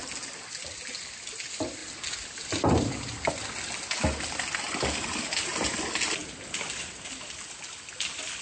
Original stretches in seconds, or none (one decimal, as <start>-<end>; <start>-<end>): 0.0-8.4